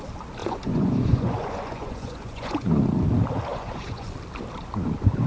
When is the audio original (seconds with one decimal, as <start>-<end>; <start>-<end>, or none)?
0.0-0.4; 2.7-3.5; 4.1-5.3